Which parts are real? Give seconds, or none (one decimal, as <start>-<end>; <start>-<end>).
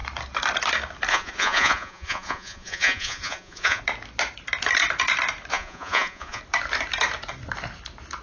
0.0-1.1; 3.8-5.5; 6.4-8.2